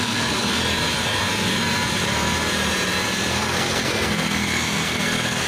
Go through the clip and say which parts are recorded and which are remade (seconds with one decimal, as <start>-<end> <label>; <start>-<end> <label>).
0.0-0.6 remade; 0.6-3.3 recorded; 3.3-5.5 remade